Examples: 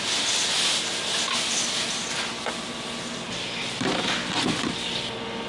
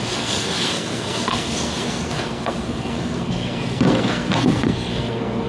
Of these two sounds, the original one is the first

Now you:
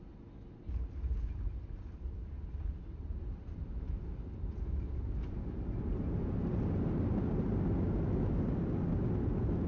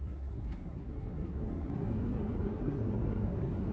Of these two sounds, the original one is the first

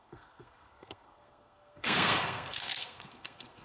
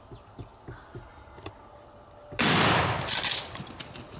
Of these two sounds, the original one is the second